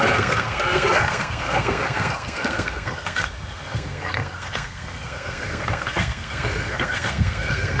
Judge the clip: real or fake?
fake